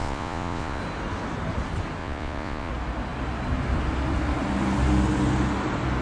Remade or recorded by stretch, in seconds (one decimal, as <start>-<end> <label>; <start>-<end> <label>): 0.0-0.8 remade; 0.8-2.0 recorded; 2.0-2.7 remade; 2.7-6.0 recorded